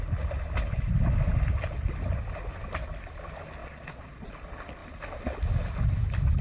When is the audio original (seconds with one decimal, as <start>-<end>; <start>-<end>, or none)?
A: 0.0-3.6; 4.3-6.4

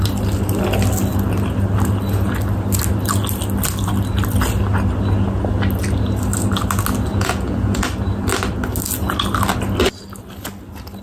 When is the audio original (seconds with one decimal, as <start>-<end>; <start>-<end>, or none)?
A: 0.0-7.1; 7.8-11.0

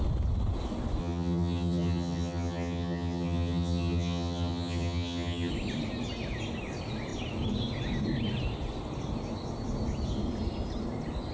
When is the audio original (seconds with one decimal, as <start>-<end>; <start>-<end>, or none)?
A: 0.0-1.0; 5.5-11.3

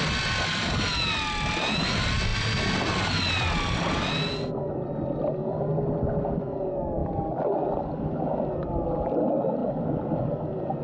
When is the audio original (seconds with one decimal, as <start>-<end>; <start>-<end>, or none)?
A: 0.0-10.8

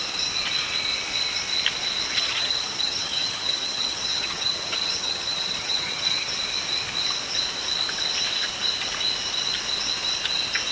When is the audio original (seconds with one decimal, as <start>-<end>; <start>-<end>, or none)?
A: 0.0-2.1; 6.4-10.7

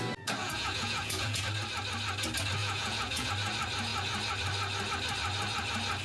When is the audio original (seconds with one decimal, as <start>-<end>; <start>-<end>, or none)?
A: 0.0-0.4; 1.4-2.6; 3.3-6.0

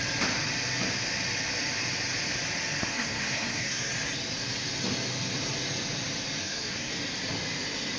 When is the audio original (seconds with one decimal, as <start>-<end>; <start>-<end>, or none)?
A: 0.0-2.9; 3.9-6.4; 6.9-8.0

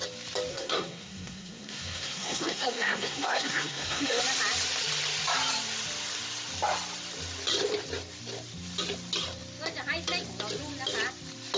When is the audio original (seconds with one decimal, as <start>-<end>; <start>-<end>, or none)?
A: 0.0-0.5; 4.2-11.6